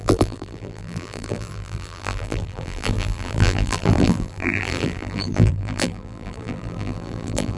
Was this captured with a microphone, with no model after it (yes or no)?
no